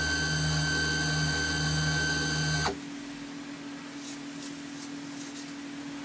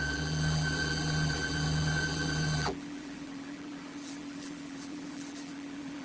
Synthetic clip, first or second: second